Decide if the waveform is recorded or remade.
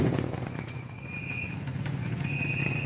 remade